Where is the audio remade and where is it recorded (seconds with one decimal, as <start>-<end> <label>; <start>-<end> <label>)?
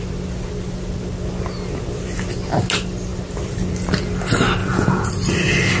0.0-4.6 recorded; 4.6-5.1 remade; 5.1-5.8 recorded